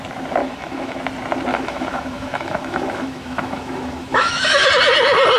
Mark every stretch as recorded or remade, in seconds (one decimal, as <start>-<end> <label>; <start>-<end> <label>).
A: 0.0-0.4 recorded; 0.4-1.0 remade; 1.0-1.5 recorded; 1.5-4.7 remade; 4.7-5.4 recorded